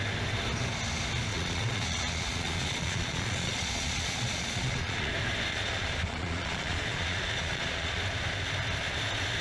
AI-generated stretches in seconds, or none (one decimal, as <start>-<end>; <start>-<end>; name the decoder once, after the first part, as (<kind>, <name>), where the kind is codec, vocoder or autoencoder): 1.3-5.1 (vocoder, Vocos); 5.5-8.0